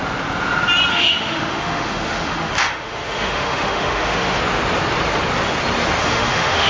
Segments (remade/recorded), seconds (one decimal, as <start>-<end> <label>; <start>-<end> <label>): 0.0-0.9 recorded; 0.9-4.4 remade; 4.4-6.0 recorded; 6.0-6.7 remade